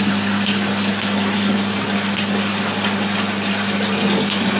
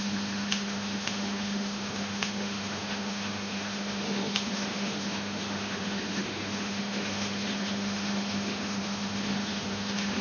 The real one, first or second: first